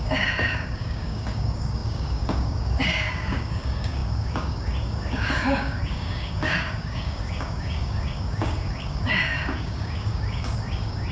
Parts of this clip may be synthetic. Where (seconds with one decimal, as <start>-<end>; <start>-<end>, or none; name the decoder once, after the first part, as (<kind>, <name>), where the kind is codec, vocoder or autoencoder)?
0.0-11.1 (codec, DAC)